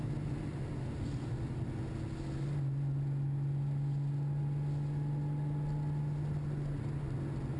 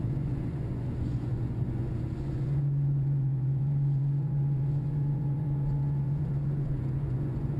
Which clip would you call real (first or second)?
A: first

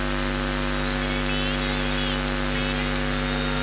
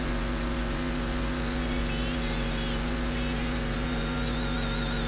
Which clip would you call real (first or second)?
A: first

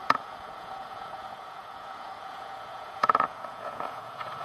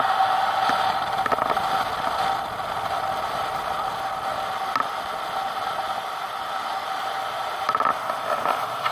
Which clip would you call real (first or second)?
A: second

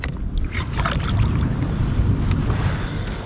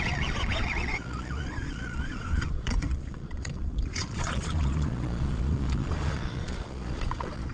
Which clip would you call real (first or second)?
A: first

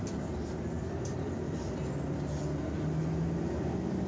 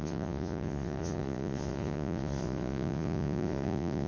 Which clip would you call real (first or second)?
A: first